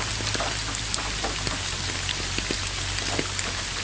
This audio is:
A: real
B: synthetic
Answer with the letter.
A